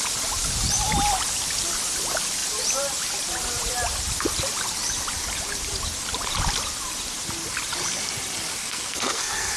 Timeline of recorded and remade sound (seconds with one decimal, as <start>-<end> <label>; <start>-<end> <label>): 0.0-8.6 recorded; 8.6-9.6 remade